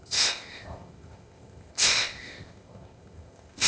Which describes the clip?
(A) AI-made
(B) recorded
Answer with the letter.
A